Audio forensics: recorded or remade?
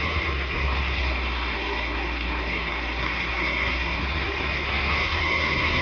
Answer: remade